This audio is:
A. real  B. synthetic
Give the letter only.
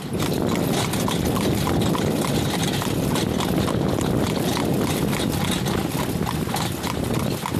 B